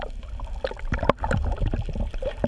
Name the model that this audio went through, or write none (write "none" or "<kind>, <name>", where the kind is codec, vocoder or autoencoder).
none